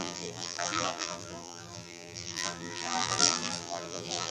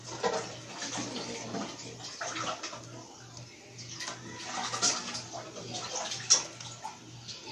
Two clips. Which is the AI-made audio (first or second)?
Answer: first